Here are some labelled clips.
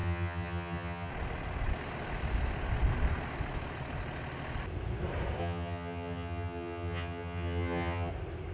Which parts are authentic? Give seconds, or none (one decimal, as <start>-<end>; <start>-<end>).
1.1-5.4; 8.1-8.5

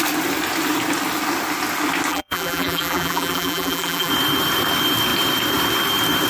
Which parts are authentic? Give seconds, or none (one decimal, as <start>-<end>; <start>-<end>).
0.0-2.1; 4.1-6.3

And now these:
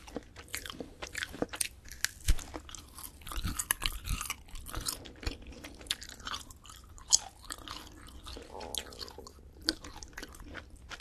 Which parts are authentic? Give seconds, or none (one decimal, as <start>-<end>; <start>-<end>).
0.0-0.5; 1.5-11.0